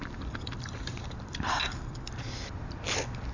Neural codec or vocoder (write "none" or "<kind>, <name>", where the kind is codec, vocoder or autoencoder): vocoder, BigVGAN v2